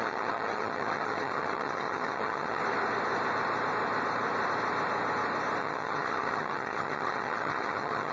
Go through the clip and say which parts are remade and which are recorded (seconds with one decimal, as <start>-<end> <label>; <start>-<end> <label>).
0.0-2.6 remade; 2.6-5.6 recorded; 5.6-8.1 remade